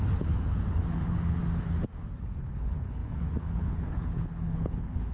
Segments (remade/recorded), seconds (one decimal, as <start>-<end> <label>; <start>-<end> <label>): 0.0-1.4 remade; 1.4-2.2 recorded; 2.2-5.1 remade